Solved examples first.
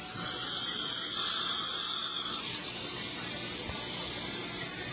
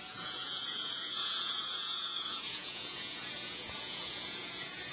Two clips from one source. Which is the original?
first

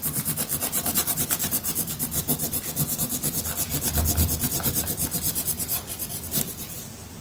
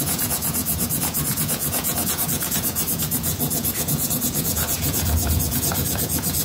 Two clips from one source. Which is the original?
first